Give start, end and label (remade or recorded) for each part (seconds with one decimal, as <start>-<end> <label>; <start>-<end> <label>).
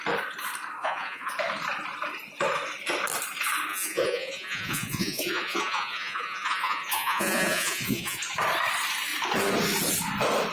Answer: 0.0-0.8 recorded; 0.8-1.3 remade; 1.3-3.7 recorded; 3.7-8.2 remade; 8.2-10.5 recorded